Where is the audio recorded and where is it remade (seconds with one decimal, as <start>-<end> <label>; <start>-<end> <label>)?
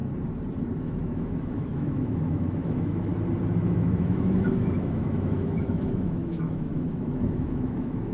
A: 0.0-0.8 recorded; 0.8-3.1 remade; 3.1-3.6 recorded; 3.6-8.1 remade